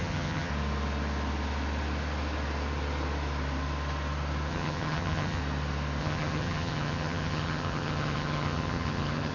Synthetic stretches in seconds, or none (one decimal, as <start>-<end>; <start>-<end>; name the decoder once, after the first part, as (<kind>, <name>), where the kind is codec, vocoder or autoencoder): 0.0-0.5 (vocoder, HiFi-GAN); 4.5-5.4; 6.0-9.3